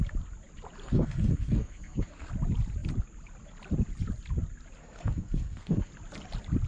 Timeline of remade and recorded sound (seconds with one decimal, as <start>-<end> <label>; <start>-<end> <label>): 0.0-0.8 recorded; 0.8-2.3 remade; 2.3-4.8 recorded; 4.8-5.9 remade; 5.9-6.7 recorded